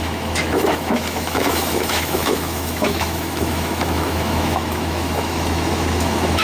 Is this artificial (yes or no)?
yes